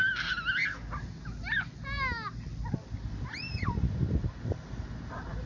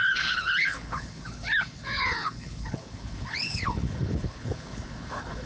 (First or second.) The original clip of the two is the first